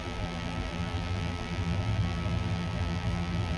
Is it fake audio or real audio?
fake